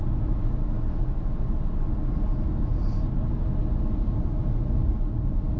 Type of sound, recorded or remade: recorded